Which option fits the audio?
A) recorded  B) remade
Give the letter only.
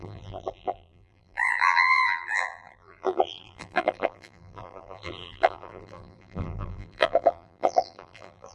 B